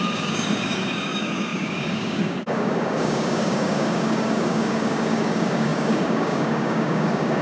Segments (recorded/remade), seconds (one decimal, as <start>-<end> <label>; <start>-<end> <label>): 0.0-7.4 remade